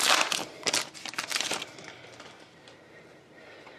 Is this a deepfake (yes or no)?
no